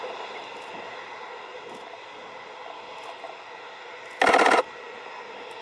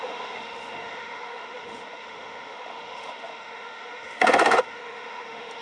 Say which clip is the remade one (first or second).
second